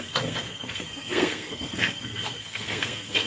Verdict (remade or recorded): remade